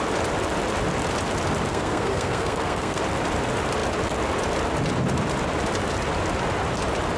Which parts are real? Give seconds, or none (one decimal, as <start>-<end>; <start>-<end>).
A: 0.0-1.7; 3.0-7.2